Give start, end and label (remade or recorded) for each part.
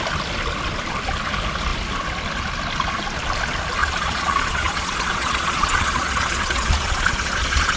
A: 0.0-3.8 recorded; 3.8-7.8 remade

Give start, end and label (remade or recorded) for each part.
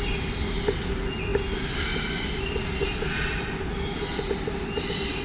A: 0.0-5.2 recorded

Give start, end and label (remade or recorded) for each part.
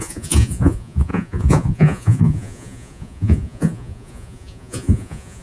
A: 0.0-5.4 remade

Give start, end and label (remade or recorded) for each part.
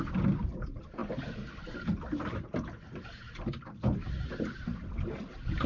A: 0.0-5.7 recorded